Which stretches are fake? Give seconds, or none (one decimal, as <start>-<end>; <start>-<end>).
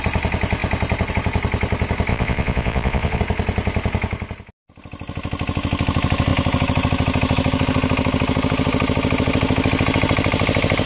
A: 2.1-3.2